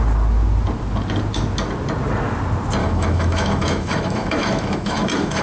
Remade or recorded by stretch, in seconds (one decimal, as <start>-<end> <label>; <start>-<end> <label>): 0.0-2.8 recorded; 2.8-5.4 remade